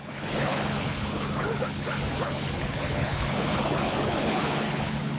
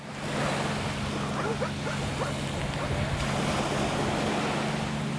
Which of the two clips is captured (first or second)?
second